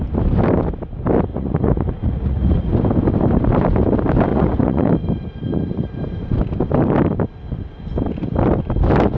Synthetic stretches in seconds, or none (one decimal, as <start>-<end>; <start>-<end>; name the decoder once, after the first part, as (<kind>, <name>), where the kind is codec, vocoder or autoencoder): 1.3-2.7 (vocoder, Vocos); 4.3-4.9